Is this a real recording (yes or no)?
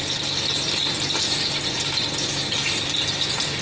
yes